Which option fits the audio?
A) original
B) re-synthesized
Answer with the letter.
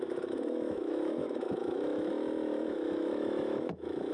B